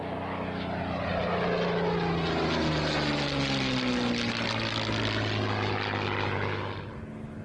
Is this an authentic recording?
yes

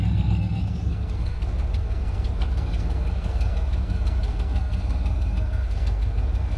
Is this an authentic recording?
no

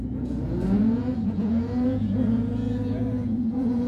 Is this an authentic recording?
no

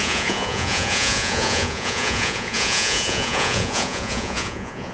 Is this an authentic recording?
no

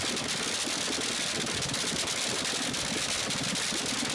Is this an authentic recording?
yes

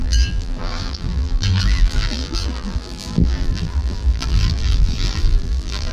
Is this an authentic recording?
no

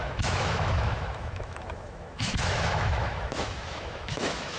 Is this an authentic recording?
no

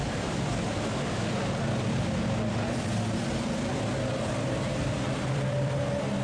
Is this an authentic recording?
no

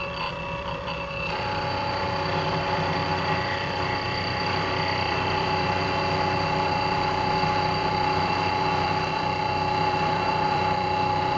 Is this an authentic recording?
no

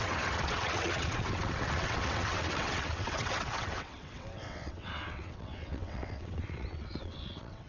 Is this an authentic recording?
no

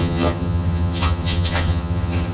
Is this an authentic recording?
no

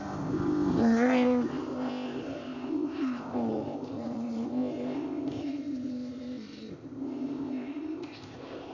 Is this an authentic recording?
no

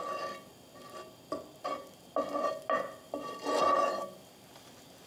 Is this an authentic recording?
yes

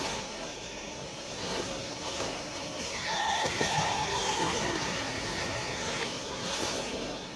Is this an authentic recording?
no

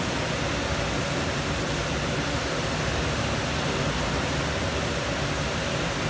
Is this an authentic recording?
yes